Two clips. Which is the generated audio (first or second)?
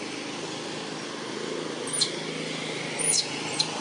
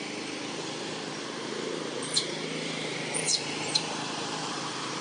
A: second